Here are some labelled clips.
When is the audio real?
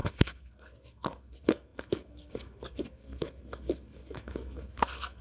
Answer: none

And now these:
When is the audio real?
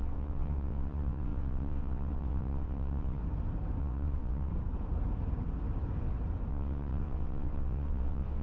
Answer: 3.2-3.8; 4.5-6.5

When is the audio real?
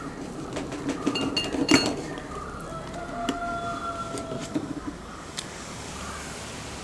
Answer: 0.0-4.4; 5.9-6.8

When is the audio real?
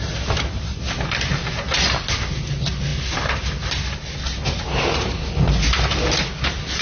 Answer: 0.0-6.8